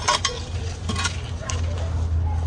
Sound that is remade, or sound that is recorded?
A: recorded